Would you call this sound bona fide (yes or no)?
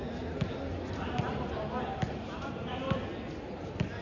yes